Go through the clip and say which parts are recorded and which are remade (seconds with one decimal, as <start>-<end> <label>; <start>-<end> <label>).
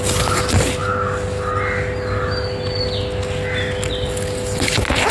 0.0-5.1 recorded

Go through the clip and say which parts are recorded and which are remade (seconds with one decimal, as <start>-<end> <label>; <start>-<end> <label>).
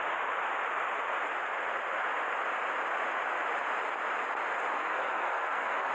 0.0-4.8 recorded; 4.8-5.9 remade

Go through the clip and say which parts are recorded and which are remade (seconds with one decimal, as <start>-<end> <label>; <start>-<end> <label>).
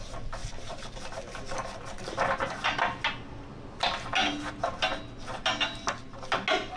0.0-6.8 recorded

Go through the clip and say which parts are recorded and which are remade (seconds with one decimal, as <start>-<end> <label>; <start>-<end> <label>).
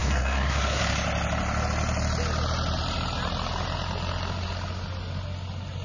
0.0-0.8 remade; 0.8-5.8 recorded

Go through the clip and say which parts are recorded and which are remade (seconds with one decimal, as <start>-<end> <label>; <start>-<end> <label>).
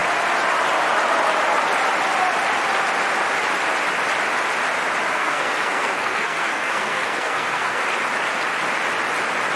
0.0-5.1 recorded; 5.1-7.8 remade; 7.8-9.6 recorded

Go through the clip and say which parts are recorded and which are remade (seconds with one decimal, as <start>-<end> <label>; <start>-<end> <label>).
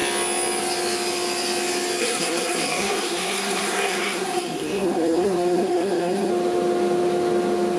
0.0-2.0 recorded; 2.0-6.3 remade; 6.3-7.8 recorded